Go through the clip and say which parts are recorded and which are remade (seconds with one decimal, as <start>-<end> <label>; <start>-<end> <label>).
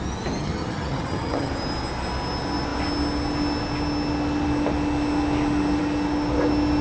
0.0-0.4 recorded; 0.4-1.5 remade; 1.5-6.8 recorded